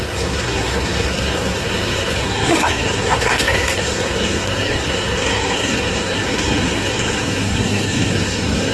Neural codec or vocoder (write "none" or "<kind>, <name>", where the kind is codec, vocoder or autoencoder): codec, SNAC